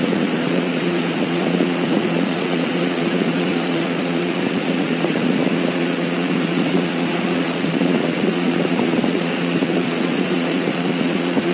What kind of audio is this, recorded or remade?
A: remade